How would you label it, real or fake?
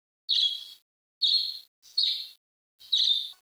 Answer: real